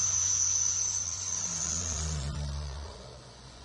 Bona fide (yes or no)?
no